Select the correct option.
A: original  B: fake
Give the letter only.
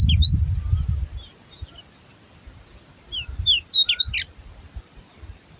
A